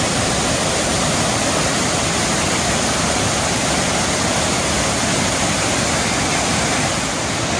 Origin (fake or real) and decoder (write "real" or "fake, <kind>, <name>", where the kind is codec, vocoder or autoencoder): real